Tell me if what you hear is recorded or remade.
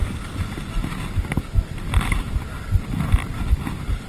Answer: recorded